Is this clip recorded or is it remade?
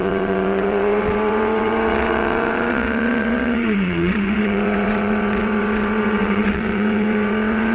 remade